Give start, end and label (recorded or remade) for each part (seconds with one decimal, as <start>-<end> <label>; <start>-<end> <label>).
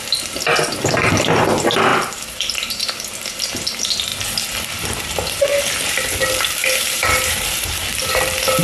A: 0.0-1.9 recorded; 1.9-2.8 remade; 2.8-6.6 recorded; 6.6-7.8 remade; 7.8-8.6 recorded